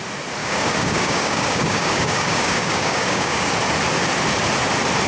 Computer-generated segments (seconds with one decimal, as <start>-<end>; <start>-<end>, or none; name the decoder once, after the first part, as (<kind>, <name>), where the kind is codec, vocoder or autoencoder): 0.4-3.5 (codec, DAC)